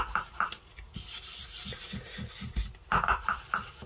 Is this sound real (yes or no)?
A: yes